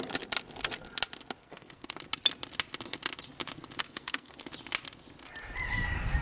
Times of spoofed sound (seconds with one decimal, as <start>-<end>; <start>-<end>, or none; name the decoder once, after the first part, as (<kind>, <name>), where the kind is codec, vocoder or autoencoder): 1.4-1.9 (codec, SNAC); 3.8-4.4